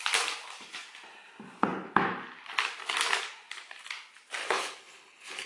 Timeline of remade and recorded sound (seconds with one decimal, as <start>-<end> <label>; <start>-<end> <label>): 0.0-4.4 recorded; 4.4-5.5 remade